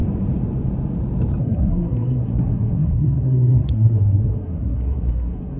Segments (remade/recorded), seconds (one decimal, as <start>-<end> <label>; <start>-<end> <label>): 0.0-1.4 recorded; 1.4-5.6 remade